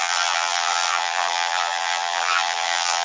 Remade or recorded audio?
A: remade